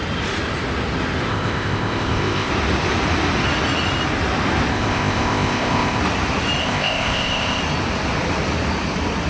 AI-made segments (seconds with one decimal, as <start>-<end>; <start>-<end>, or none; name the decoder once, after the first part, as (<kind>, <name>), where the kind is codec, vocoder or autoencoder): 1.3-2.5 (codec, ZipCodec); 4.7-6.0; 6.6-7.6